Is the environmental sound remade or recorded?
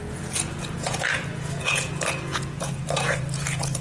remade